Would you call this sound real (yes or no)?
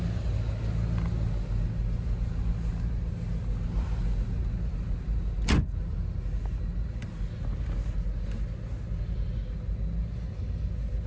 yes